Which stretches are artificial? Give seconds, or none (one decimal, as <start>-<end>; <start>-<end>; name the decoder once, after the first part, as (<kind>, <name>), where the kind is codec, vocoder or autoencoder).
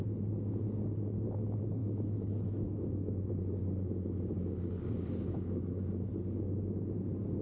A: 1.8-3.3 (autoencoder, DAC-VAE)